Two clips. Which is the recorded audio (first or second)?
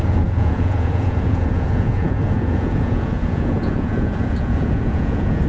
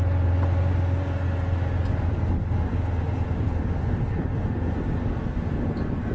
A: second